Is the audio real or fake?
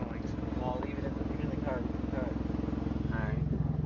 real